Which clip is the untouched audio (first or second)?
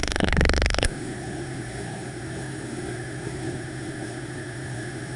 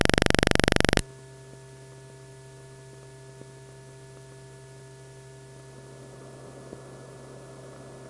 second